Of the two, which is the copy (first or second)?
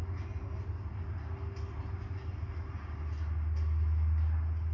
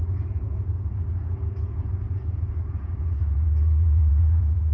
second